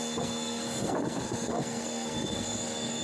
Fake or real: fake